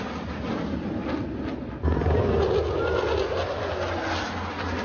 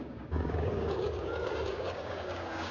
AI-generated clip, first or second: second